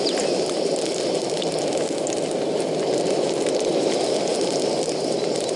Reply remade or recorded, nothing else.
recorded